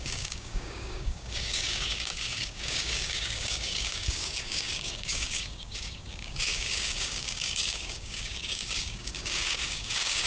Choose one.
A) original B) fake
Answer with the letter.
B